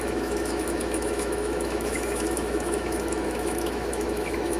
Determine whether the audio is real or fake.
fake